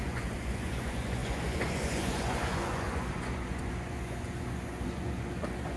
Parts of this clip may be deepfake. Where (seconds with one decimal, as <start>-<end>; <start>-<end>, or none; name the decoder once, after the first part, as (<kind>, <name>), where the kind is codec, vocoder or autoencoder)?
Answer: 0.0-5.8 (vocoder, Vocos)